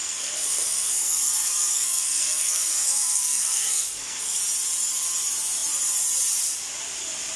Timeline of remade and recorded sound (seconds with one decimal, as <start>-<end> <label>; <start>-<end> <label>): 0.0-4.4 remade; 4.4-7.4 recorded